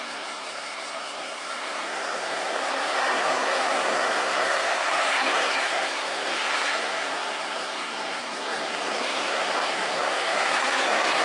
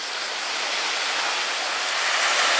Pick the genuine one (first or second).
second